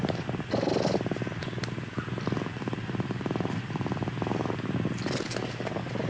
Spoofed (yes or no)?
no